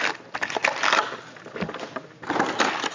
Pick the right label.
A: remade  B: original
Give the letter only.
B